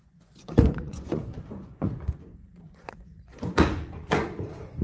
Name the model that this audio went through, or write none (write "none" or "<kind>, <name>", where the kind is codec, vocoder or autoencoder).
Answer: vocoder, Vocos